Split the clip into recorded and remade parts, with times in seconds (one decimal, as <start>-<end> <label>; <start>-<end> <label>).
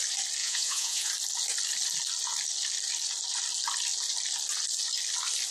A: 0.0-0.4 recorded; 0.4-1.1 remade; 1.1-5.5 recorded